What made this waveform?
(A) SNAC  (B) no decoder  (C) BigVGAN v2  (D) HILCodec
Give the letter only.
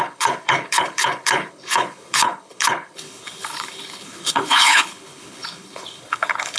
D